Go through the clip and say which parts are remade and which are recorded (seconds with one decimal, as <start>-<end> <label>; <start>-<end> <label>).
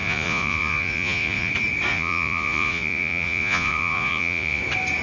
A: 0.0-1.5 remade; 1.5-1.9 recorded; 1.9-4.6 remade; 4.6-5.0 recorded